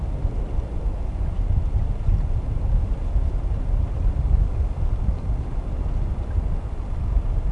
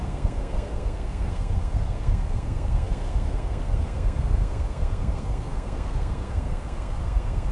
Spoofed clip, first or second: second